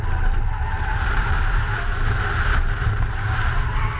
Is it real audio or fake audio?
real